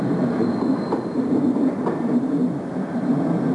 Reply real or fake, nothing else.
real